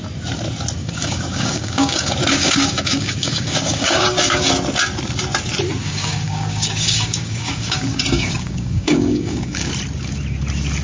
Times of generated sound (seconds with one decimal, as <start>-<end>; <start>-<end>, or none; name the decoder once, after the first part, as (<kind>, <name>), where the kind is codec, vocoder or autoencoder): 0.8-4.5 (codec, DAC); 5.8-9.7